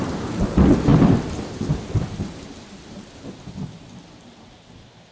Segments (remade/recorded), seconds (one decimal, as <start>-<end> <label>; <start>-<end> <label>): 0.0-5.1 remade